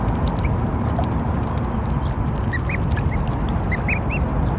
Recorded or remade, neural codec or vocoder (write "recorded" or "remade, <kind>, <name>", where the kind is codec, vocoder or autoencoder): recorded